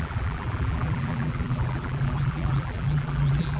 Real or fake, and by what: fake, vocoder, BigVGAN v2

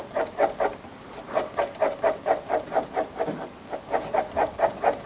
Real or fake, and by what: real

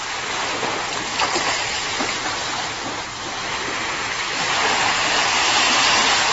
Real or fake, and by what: real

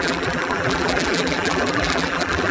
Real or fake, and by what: fake, vocoder, BigVGAN v2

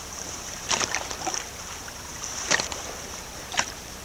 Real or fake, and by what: fake, vocoder, BigVGAN v2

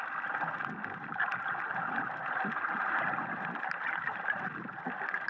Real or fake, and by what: real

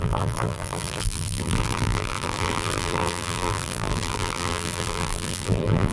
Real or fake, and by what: fake, vocoder, BigVGAN v2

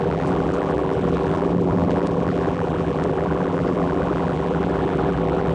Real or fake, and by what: fake, vocoder, BigVGAN v2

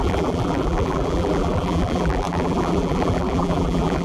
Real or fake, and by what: fake, vocoder, BigVGAN v2